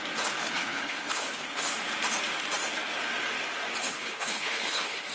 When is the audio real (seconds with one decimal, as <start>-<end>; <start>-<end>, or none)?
0.0-0.4; 1.6-3.8